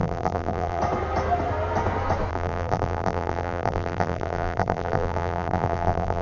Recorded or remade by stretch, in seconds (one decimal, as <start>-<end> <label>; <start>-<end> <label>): 0.0-0.8 remade; 0.8-2.3 recorded; 2.3-6.2 remade